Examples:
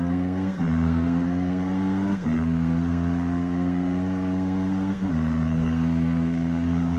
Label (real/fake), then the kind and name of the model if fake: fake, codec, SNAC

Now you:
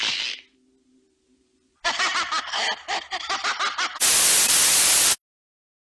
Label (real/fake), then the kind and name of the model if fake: real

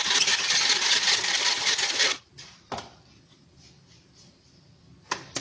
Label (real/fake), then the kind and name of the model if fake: real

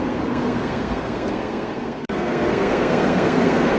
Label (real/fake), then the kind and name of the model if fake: fake, codec, SNAC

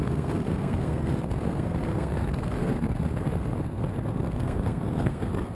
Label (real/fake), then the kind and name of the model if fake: fake, codec, SNAC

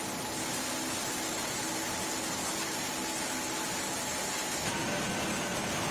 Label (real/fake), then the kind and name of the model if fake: real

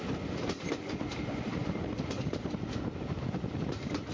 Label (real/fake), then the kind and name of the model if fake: real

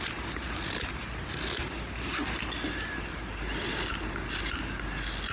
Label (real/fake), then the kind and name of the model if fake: real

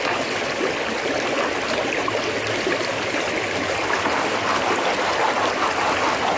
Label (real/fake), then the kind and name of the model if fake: real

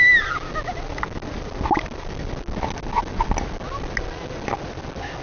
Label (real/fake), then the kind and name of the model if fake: real